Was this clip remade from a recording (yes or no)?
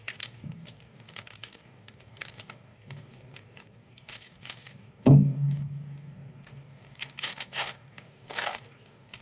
yes